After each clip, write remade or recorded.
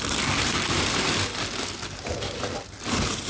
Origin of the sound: recorded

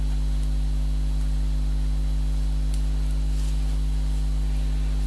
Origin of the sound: recorded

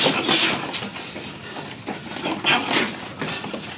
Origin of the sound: recorded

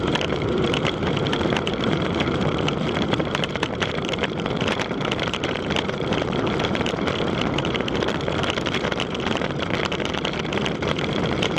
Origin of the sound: remade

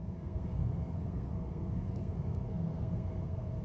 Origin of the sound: remade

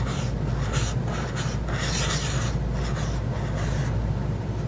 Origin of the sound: recorded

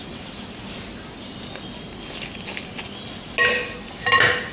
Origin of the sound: recorded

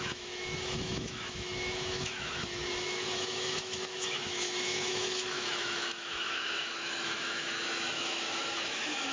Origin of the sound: remade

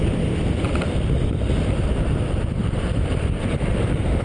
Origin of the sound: remade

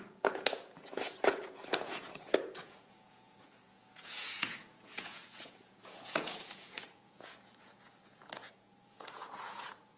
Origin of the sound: remade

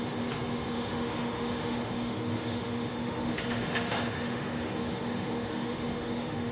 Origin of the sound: remade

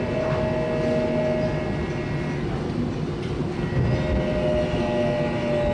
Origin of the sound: recorded